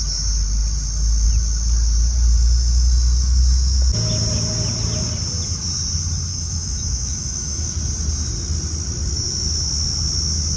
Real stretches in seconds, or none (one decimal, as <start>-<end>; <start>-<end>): 0.0-6.3; 7.7-10.6